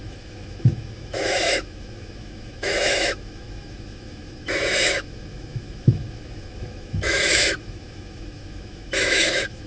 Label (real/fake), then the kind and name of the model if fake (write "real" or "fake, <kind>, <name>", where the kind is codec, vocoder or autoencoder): fake, autoencoder, DAC-VAE